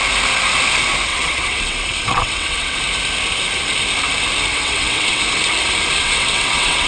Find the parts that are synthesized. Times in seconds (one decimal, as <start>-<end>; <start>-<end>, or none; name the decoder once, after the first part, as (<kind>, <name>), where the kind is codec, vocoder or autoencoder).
1.1-2.8 (vocoder, WaveNeXt); 4.5-5.2; 6.0-6.9

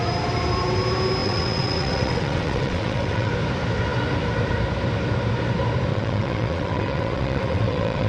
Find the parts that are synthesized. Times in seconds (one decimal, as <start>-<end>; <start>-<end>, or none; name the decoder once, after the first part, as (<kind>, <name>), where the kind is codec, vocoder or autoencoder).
1.2-3.3 (vocoder, WaveNeXt); 5.9-8.1

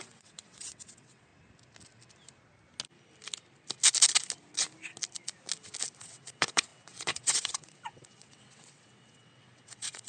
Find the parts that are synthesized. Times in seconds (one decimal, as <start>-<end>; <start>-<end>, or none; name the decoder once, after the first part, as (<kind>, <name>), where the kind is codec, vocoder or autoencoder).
0.0-1.3 (vocoder, WaveNeXt); 6.0-10.1

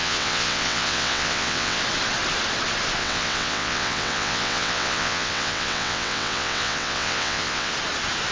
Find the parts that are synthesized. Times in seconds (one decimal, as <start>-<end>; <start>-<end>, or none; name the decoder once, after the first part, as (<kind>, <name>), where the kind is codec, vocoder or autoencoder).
0.0-1.8 (vocoder, WaveNeXt); 3.0-7.7

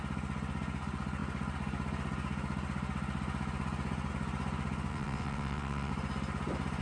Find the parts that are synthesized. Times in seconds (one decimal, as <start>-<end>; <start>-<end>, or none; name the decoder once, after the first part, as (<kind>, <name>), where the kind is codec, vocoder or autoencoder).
4.9-5.9 (vocoder, WaveNeXt)

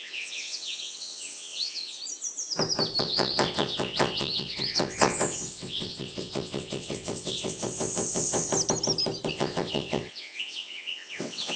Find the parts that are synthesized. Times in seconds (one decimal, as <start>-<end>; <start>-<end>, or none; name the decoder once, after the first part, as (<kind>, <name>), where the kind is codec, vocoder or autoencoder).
0.0-2.0 (vocoder, WaveNeXt); 3.0-8.5; 9.3-11.6